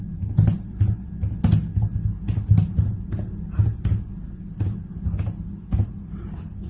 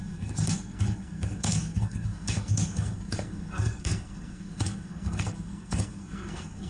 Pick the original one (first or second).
first